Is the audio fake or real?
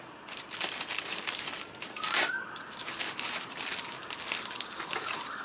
real